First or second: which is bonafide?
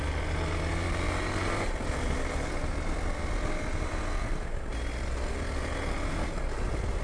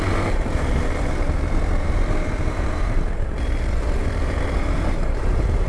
first